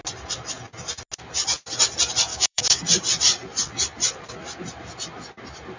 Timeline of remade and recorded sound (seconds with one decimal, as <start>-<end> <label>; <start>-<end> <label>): 0.0-2.3 recorded; 2.3-2.8 remade; 2.8-5.8 recorded